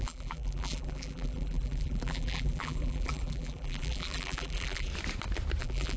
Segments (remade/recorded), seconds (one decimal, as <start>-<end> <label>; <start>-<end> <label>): 0.0-4.9 remade; 4.9-5.6 recorded; 5.6-6.0 remade

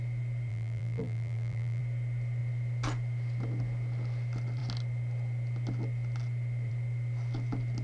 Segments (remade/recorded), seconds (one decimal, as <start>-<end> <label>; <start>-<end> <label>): 0.0-0.5 recorded; 0.5-1.8 remade; 1.8-7.8 recorded

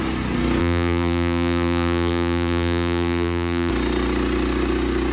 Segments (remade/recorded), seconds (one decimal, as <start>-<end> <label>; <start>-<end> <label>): 0.0-0.6 recorded; 0.6-3.7 remade; 3.7-5.1 recorded

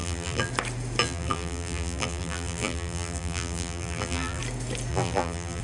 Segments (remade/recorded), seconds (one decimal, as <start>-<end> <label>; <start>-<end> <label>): 0.0-0.5 remade; 0.5-1.0 recorded; 1.0-4.4 remade; 4.4-4.9 recorded; 4.9-5.6 remade